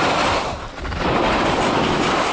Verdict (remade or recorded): remade